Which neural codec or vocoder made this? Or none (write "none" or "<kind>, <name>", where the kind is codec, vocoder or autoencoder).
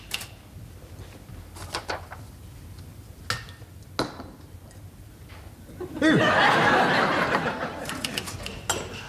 none